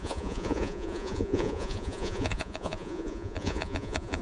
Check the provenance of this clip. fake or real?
fake